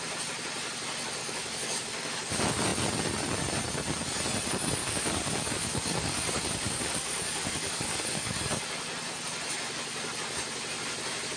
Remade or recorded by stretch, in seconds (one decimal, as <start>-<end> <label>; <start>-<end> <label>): 0.0-1.2 recorded; 1.2-2.3 remade; 2.3-4.8 recorded; 4.8-8.4 remade; 8.4-11.4 recorded